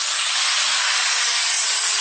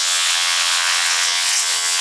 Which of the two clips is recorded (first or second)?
first